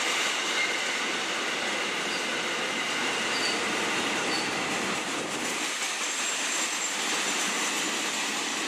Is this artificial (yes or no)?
no